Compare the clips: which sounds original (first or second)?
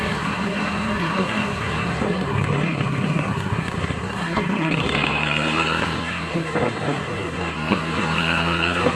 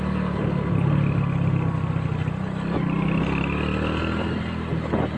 second